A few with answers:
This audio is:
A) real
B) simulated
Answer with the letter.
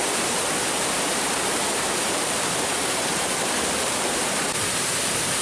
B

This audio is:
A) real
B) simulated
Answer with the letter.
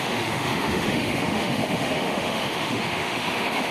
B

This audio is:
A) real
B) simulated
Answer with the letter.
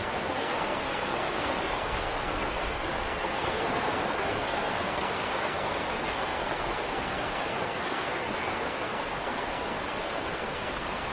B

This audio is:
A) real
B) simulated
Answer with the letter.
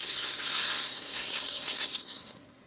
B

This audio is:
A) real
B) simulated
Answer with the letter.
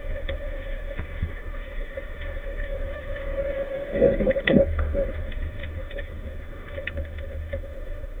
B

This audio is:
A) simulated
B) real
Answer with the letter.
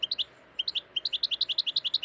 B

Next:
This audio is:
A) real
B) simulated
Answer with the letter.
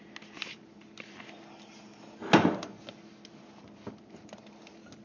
A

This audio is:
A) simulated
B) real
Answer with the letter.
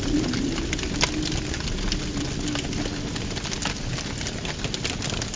B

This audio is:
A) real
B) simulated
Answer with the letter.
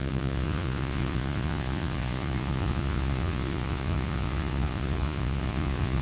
B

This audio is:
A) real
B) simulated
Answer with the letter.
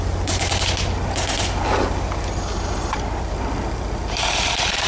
A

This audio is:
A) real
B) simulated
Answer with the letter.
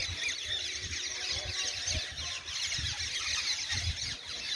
A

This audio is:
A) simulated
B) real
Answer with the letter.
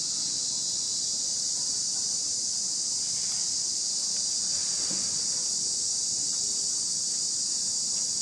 B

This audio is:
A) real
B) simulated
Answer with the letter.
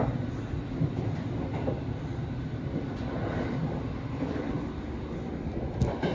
A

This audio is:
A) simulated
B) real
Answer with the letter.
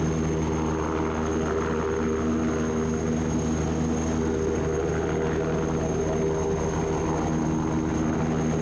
B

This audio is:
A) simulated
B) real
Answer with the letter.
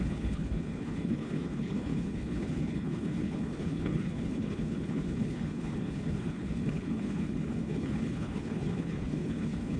A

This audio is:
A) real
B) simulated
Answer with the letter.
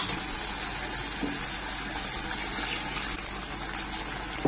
A